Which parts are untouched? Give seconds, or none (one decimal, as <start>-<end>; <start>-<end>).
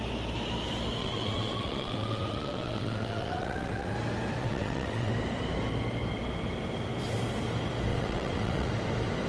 0.0-1.0; 3.9-4.4; 5.1-7.9; 8.7-9.3